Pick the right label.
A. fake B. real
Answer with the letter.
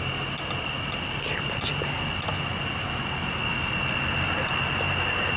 B